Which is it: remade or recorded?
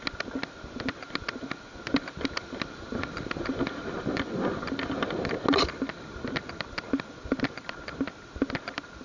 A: recorded